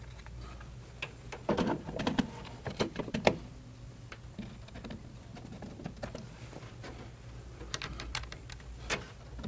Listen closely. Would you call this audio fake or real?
real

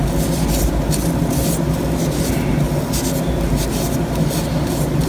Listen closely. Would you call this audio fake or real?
real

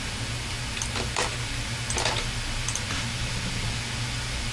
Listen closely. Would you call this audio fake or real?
real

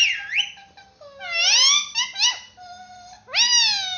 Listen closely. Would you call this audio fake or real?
real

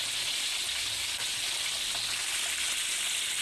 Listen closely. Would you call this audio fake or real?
real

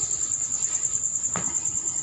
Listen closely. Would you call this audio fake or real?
real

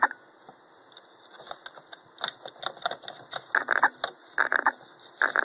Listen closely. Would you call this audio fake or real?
real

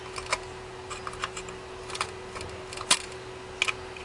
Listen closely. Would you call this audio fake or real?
real